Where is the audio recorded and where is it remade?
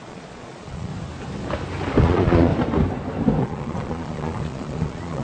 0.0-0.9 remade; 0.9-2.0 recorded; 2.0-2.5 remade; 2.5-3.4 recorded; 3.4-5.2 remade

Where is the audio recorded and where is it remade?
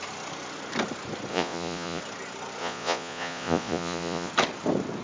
0.0-1.3 recorded; 1.3-2.0 remade; 2.0-2.6 recorded; 2.6-4.3 remade; 4.3-5.0 recorded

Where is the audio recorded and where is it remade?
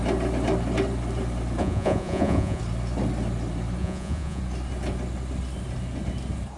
0.0-1.6 recorded; 1.6-2.6 remade; 2.6-3.8 recorded; 3.8-4.4 remade; 4.4-6.6 recorded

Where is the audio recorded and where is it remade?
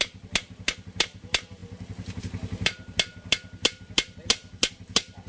0.0-5.3 recorded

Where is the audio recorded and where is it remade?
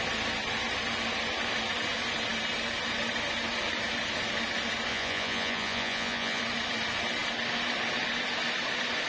0.0-4.9 recorded; 4.9-6.4 remade; 6.4-9.1 recorded